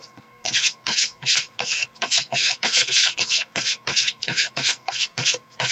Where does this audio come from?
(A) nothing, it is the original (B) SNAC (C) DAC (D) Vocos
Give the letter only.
B